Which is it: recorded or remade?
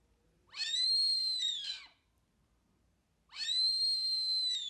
recorded